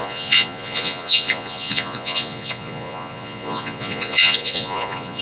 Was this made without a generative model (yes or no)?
no